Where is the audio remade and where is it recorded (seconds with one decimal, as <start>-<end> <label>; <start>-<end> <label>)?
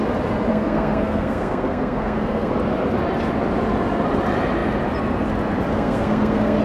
0.0-0.5 recorded; 0.5-2.5 remade; 2.5-5.7 recorded; 5.7-6.6 remade